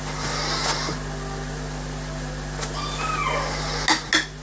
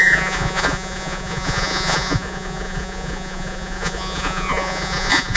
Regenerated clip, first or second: second